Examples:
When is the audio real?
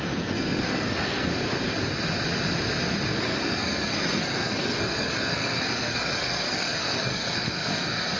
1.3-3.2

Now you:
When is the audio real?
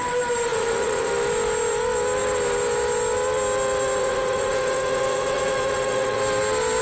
0.0-0.5; 1.1-4.0; 6.2-6.8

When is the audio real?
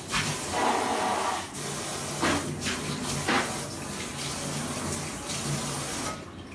0.0-6.5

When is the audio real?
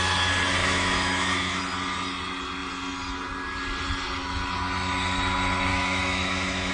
0.0-0.6; 1.6-5.7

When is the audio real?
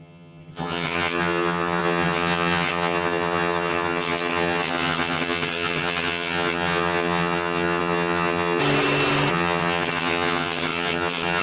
8.6-9.3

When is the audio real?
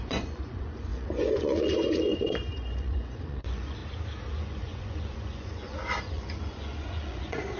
3.8-4.3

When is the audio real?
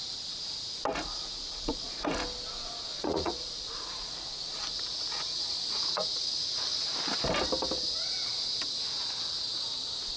0.0-0.9; 2.2-2.9; 6.9-10.2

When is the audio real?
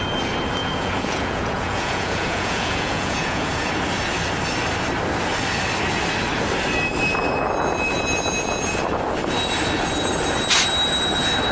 0.0-0.6; 3.7-11.5